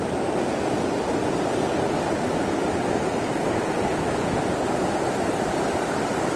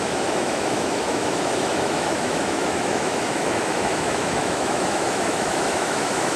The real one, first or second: first